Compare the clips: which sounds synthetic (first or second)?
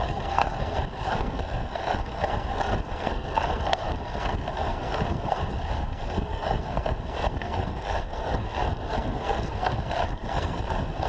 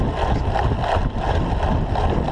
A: first